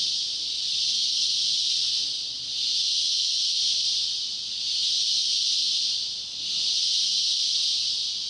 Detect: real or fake real